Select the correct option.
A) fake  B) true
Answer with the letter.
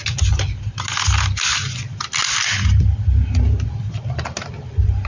B